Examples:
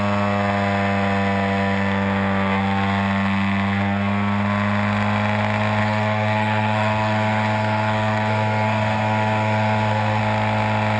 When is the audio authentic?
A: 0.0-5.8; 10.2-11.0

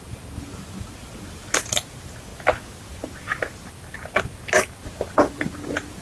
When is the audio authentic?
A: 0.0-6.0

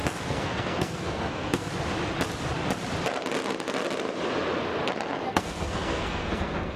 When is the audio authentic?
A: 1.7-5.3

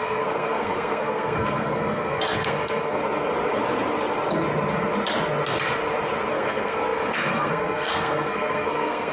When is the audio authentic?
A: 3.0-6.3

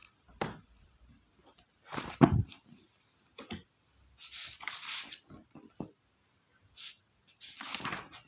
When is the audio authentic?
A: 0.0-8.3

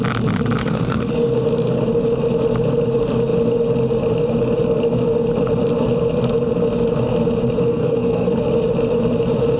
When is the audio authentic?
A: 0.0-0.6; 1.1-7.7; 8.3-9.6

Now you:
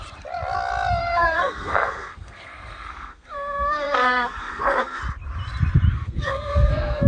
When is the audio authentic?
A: 0.0-1.0; 5.0-5.9

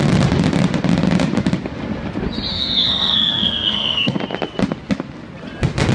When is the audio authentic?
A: 0.0-2.5; 4.2-5.9